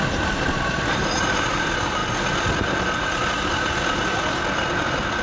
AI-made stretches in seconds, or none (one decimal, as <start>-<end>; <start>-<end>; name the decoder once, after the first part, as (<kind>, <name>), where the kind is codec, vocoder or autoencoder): 0.0-2.0 (vocoder, BigVGAN v2)